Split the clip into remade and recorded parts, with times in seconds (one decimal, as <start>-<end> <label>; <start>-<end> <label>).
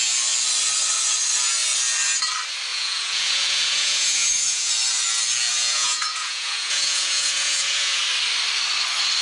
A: 0.0-2.7 recorded; 2.7-4.7 remade; 4.7-5.5 recorded; 5.5-8.0 remade; 8.0-9.2 recorded